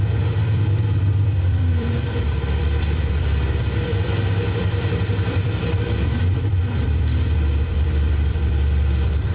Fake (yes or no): yes